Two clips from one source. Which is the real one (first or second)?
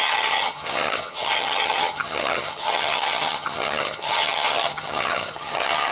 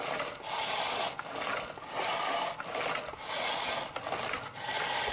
second